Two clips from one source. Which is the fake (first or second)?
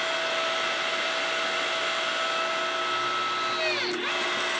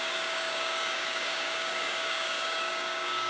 second